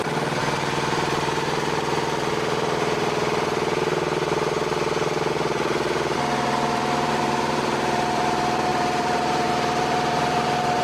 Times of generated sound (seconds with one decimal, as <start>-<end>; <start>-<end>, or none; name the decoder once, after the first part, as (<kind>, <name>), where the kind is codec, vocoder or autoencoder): 0.0-10.8 (vocoder, BigVGAN v2)